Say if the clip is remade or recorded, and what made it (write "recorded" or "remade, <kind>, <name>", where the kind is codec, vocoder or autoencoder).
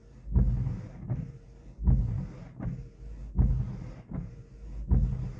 recorded